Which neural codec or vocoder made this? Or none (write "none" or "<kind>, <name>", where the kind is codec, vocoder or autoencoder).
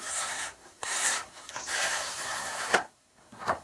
codec, SNAC